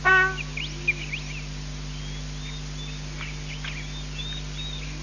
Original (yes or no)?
yes